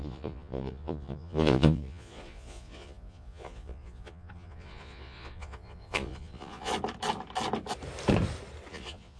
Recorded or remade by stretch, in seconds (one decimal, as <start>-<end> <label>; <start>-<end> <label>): 0.0-6.7 remade; 6.7-8.7 recorded; 8.7-9.2 remade